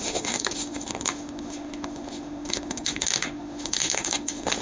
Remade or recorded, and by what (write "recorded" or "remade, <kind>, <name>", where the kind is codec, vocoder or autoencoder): remade, autoencoder, DAC-VAE